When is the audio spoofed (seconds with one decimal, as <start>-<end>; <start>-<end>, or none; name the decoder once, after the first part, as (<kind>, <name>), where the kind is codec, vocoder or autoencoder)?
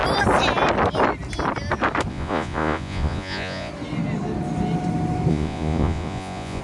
2.1-3.7 (vocoder, Vocos); 5.3-6.6